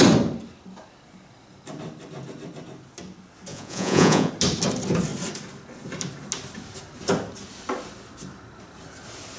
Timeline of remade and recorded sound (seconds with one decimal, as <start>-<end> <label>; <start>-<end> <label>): 0.0-3.5 recorded; 3.5-4.3 remade; 4.3-9.4 recorded